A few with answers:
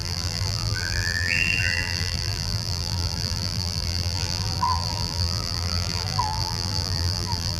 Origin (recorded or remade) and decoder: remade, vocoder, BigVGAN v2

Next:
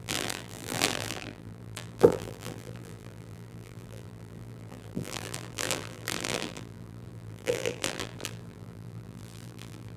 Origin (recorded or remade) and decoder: remade, vocoder, BigVGAN v2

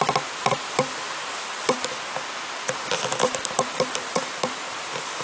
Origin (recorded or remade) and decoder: remade, vocoder, BigVGAN v2